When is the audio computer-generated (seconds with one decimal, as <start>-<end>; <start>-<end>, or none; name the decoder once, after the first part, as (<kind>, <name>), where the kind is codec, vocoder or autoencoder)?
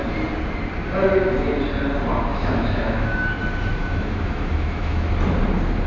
2.3-3.4 (autoencoder, DAC-VAE); 3.8-5.1